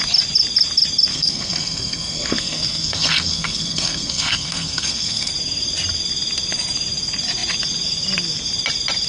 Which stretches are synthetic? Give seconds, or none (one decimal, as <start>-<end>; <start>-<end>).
1.1-5.3